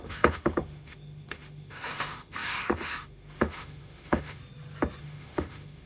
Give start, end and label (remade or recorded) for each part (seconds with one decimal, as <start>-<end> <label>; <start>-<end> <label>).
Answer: 0.0-4.4 remade; 4.4-5.0 recorded; 5.0-5.9 remade